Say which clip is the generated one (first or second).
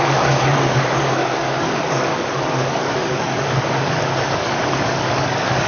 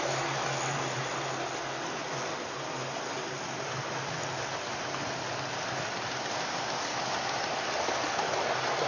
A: first